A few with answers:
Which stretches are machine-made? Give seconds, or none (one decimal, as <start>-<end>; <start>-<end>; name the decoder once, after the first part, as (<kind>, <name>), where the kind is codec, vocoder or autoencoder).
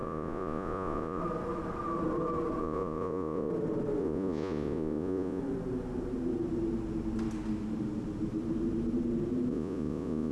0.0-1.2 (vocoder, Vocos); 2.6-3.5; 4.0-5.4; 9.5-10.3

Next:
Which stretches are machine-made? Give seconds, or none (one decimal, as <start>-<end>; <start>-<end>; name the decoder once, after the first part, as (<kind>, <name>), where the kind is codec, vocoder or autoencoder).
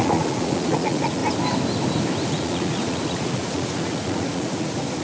0.0-1.2 (vocoder, Vocos); 2.3-5.0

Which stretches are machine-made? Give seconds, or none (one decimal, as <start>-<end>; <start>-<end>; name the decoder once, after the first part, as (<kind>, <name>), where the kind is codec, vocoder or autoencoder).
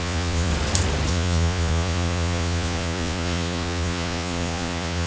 0.0-0.5 (vocoder, Vocos); 1.1-5.1